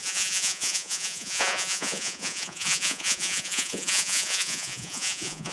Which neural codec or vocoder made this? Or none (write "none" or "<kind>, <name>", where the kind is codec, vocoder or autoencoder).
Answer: vocoder, Vocos